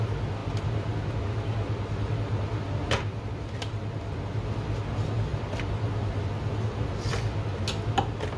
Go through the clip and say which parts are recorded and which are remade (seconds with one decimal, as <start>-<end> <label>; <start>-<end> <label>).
0.0-8.4 recorded